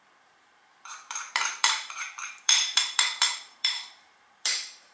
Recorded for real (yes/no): no